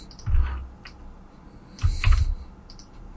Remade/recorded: recorded